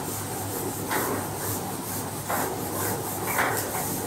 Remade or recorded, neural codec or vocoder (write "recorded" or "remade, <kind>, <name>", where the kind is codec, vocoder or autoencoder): recorded